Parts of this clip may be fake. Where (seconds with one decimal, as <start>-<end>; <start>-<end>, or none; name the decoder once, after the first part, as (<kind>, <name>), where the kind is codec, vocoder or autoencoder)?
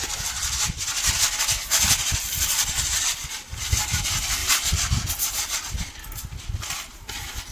none